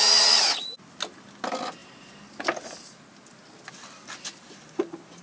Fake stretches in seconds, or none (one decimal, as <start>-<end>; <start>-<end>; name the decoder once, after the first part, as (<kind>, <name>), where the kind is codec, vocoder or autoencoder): none